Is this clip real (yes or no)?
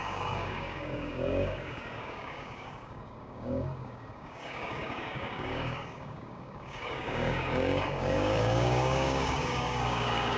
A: no